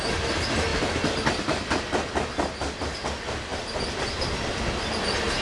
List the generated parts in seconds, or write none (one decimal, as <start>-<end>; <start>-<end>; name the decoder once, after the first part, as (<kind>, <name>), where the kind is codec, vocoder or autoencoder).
none